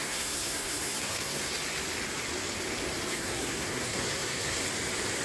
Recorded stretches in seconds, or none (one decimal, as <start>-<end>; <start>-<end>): 1.5-3.1; 4.6-5.2